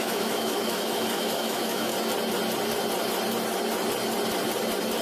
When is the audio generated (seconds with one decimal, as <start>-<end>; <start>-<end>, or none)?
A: 0.0-1.9